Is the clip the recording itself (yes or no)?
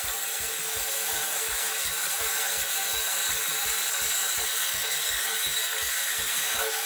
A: no